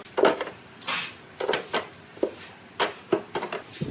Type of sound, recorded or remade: recorded